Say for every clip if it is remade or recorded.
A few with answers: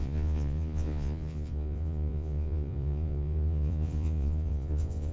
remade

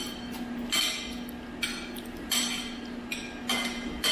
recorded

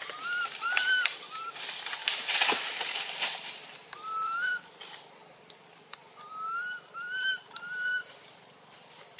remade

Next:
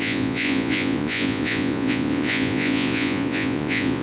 remade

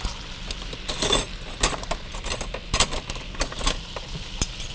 recorded